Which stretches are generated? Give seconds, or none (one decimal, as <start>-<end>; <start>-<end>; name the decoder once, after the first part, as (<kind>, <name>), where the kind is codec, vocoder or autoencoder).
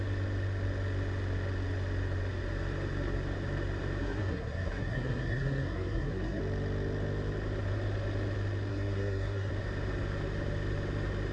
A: 4.0-6.4 (codec, SNAC); 8.7-9.5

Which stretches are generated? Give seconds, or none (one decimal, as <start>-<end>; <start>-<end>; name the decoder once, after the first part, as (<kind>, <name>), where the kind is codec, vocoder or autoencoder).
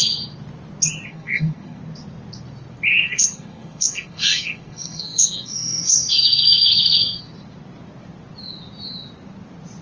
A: 1.1-1.8 (codec, SNAC); 2.9-7.2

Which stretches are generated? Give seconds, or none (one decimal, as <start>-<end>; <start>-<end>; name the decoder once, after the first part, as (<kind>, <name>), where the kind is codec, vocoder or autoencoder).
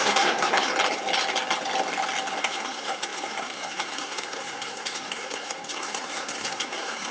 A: 0.0-0.7 (codec, SNAC); 2.4-7.1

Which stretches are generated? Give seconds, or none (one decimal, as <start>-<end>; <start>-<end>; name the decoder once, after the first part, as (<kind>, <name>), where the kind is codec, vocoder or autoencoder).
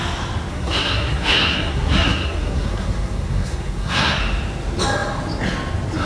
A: 0.5-4.2 (codec, SNAC)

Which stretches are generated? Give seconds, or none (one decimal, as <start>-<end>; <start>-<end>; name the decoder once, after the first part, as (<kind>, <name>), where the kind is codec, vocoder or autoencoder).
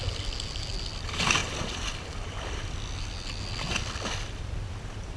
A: none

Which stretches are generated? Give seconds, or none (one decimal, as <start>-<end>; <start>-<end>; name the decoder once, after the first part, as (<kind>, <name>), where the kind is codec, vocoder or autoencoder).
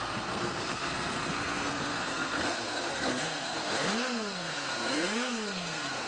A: 0.0-6.1 (codec, SNAC)